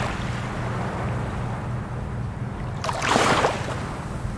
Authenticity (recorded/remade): recorded